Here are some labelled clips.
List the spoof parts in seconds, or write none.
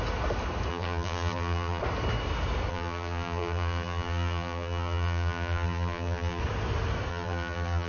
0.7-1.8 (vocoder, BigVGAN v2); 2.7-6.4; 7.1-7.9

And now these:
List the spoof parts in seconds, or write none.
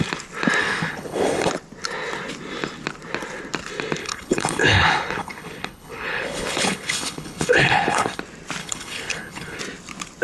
0.6-1.5 (codec, HILCodec); 4.0-8.2; 8.6-9.6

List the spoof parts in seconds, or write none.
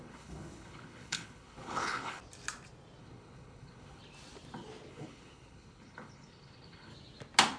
0.0-2.2 (codec, HILCodec); 3.0-4.0; 4.9-6.9